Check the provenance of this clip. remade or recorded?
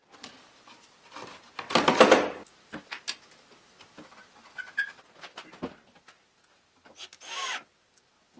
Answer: recorded